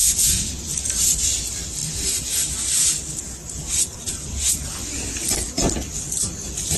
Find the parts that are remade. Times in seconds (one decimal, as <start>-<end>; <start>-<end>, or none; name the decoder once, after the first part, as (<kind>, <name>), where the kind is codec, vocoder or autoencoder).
0.0-0.6 (vocoder, Vocos)